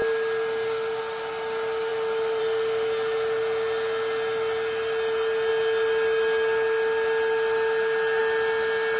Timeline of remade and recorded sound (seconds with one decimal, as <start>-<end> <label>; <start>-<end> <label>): 0.0-9.0 recorded